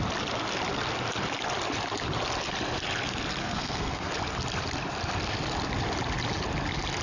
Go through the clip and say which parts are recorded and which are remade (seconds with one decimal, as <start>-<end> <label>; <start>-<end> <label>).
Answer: 0.0-3.4 recorded; 3.4-4.1 remade; 4.1-7.0 recorded